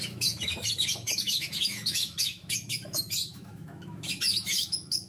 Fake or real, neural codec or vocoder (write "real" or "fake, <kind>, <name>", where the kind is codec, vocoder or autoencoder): fake, autoencoder, DAC-VAE